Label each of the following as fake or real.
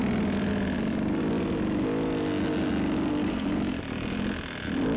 real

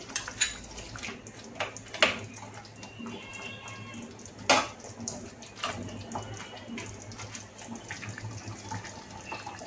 real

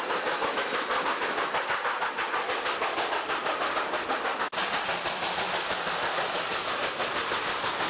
real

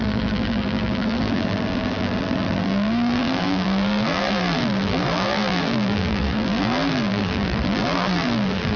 fake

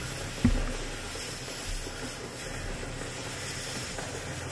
real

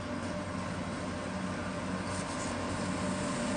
real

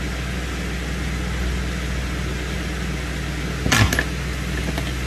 real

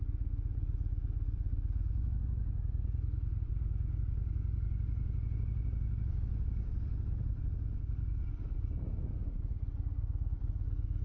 real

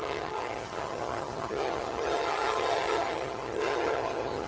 fake